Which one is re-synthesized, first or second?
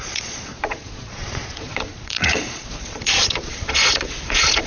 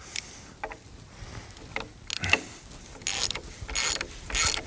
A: first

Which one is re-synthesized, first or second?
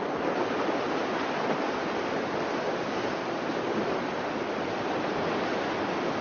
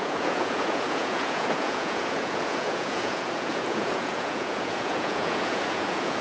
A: second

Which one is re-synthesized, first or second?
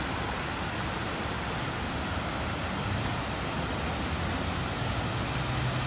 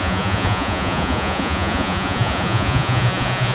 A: second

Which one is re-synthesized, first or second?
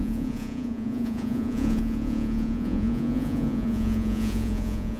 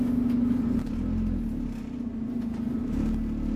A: first